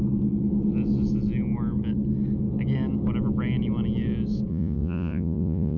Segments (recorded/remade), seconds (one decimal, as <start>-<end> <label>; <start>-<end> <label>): 0.0-4.5 recorded; 4.5-5.8 remade